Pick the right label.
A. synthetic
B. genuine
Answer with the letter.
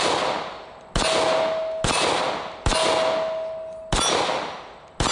B